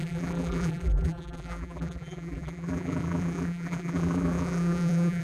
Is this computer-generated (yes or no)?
yes